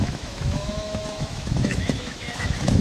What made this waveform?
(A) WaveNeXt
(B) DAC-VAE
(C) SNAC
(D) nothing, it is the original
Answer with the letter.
B